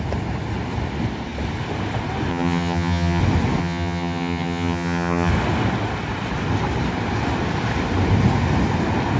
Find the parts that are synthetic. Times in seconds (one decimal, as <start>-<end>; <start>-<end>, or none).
2.3-3.2; 3.6-5.3